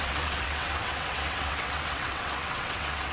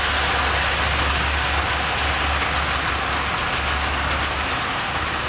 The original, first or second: second